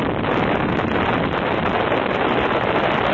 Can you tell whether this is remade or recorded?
recorded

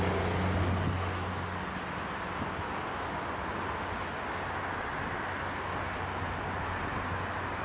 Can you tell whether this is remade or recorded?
recorded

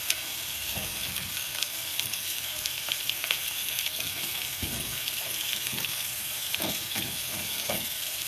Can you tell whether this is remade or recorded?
remade